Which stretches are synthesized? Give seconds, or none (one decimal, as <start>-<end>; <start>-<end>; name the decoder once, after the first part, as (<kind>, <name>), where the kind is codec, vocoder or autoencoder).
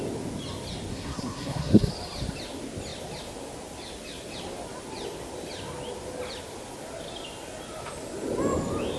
0.9-1.9 (codec, SNAC)